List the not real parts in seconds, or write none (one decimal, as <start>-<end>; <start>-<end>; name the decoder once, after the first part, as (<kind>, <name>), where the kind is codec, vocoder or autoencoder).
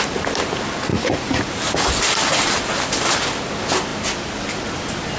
0.9-1.5 (vocoder, Vocos)